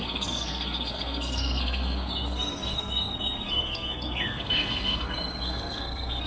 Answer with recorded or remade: remade